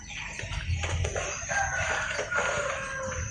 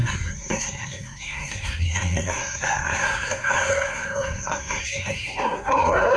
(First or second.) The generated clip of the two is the second